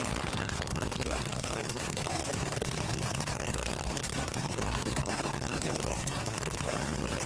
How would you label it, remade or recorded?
remade